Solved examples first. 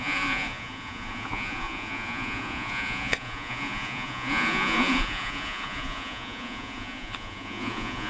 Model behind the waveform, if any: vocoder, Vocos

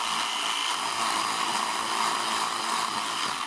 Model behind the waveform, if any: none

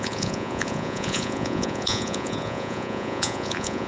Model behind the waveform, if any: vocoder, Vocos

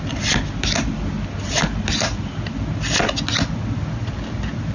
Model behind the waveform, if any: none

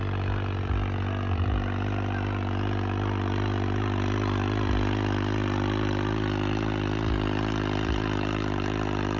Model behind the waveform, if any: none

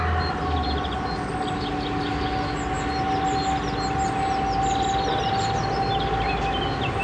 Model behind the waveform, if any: none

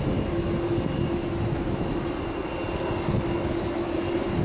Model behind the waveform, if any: none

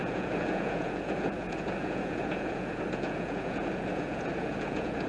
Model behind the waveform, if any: vocoder, Vocos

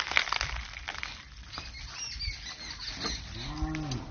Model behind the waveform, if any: none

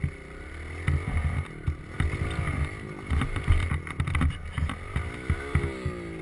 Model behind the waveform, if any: none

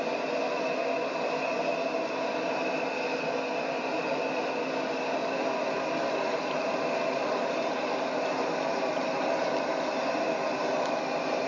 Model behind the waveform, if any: none